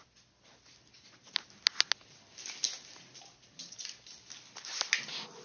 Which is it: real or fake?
real